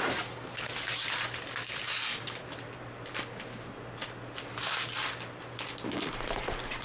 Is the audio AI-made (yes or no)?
no